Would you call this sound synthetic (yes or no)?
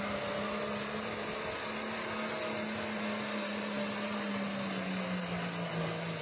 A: no